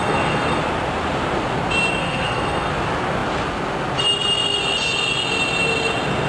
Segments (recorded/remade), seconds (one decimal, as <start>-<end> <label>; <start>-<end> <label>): 0.0-0.6 remade; 0.6-2.0 recorded; 2.0-2.7 remade; 2.7-6.3 recorded